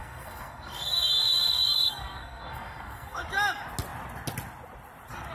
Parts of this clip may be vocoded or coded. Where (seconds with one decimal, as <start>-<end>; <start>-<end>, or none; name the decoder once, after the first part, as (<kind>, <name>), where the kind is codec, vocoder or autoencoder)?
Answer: 0.0-3.2 (codec, SNAC)